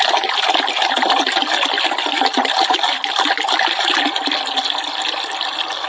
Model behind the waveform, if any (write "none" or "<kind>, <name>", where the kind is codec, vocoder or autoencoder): none